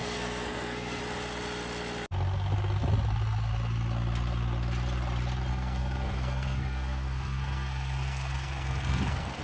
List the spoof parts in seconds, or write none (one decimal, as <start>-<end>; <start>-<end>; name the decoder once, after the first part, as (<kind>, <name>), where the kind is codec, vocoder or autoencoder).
0.0-1.0 (codec, SNAC); 5.5-9.4